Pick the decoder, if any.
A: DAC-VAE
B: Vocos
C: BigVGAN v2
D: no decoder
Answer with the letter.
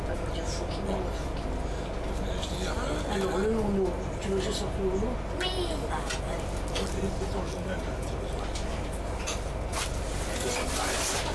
D